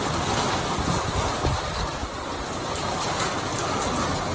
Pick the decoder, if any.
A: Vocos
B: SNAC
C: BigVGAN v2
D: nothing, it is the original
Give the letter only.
D